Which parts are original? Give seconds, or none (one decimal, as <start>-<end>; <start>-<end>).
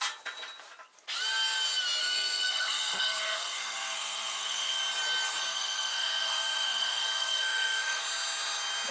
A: 0.0-2.0; 4.8-5.5; 8.0-8.9